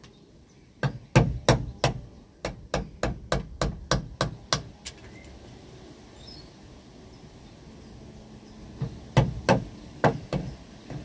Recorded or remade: recorded